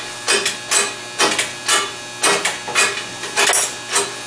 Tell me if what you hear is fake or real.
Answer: real